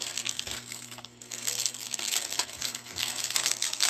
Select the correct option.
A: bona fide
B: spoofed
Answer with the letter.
B